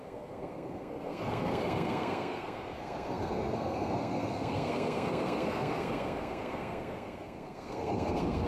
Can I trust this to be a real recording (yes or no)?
no